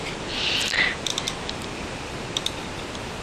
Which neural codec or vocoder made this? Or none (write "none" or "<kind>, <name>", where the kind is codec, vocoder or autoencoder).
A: none